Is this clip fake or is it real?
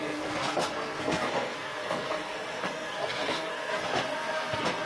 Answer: fake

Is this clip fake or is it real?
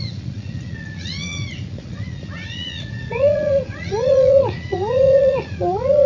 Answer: fake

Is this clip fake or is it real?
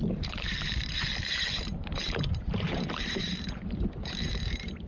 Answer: fake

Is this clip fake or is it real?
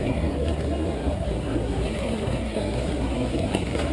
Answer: fake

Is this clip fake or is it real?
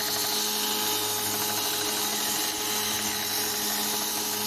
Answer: real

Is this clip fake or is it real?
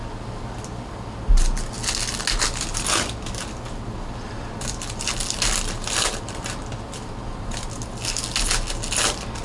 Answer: real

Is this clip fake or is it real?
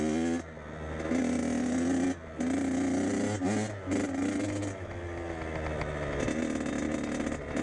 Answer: real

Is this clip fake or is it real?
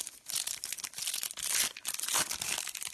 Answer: real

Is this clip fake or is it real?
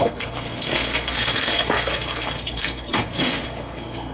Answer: fake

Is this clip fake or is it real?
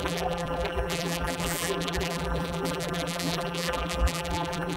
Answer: fake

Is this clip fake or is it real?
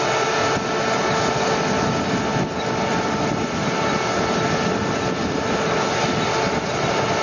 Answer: real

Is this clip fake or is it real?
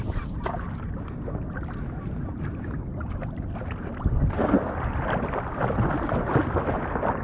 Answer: real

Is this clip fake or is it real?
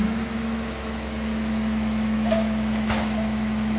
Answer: fake